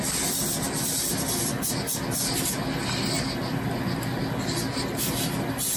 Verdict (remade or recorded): recorded